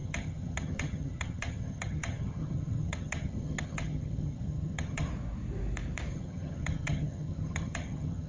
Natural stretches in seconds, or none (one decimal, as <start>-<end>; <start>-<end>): 5.1-6.1